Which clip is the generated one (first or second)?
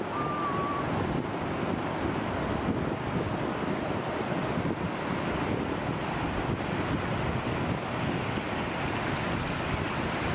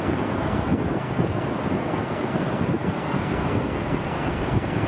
second